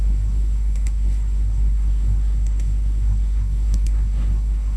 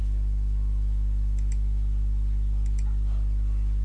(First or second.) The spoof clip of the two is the first